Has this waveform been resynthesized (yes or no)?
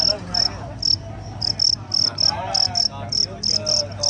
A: no